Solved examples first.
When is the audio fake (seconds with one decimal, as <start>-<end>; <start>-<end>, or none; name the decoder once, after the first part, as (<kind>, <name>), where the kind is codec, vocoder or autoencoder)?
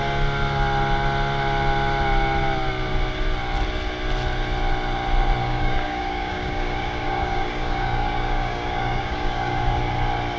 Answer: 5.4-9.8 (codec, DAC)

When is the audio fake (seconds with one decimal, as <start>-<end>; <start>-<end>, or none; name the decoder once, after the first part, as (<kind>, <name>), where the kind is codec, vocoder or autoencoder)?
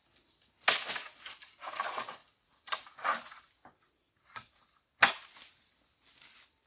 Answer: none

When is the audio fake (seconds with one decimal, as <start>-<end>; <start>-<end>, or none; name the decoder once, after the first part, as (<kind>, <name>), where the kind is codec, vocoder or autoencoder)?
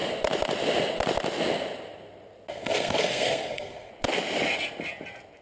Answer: 2.5-3.9 (codec, SNAC)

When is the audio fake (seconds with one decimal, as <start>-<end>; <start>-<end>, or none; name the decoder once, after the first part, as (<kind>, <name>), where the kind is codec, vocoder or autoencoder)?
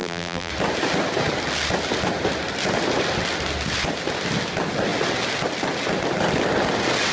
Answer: 0.0-0.5 (vocoder, BigVGAN v2)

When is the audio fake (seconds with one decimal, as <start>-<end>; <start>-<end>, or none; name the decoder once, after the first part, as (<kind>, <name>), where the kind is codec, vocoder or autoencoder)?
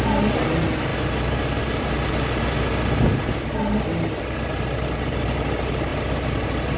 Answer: none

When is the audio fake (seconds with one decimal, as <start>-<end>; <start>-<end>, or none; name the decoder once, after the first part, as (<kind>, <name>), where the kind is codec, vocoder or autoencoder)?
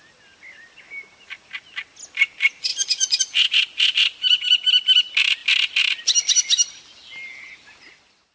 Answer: none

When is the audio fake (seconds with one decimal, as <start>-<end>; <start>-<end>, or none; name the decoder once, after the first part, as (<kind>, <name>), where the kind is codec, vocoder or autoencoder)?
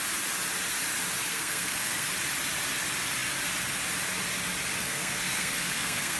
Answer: 1.3-2.1 (codec, SNAC); 4.8-6.2